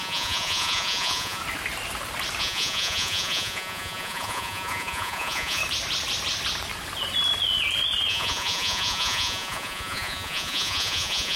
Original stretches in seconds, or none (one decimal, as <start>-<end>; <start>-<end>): 1.4-2.4; 5.6-8.1